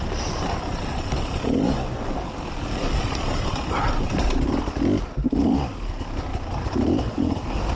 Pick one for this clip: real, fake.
real